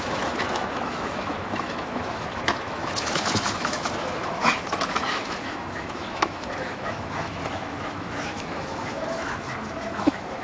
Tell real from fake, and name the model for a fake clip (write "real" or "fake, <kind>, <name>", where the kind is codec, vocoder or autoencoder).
fake, autoencoder, DAC-VAE